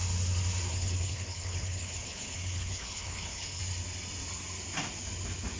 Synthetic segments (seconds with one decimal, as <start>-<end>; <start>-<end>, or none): 0.7-3.6